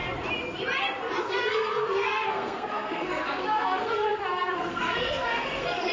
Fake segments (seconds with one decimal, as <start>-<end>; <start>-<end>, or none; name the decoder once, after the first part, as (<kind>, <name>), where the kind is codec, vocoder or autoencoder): 1.2-5.9 (codec, SNAC)